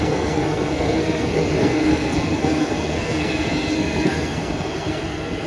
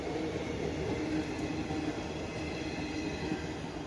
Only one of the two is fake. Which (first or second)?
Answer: first